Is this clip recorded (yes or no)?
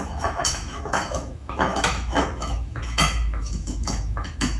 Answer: no